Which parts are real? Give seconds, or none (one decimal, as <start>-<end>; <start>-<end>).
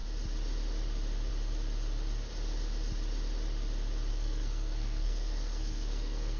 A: 0.0-4.1